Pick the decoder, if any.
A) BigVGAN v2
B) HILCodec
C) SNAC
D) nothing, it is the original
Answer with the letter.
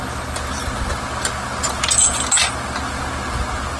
D